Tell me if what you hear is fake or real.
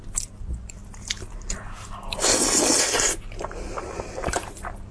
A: real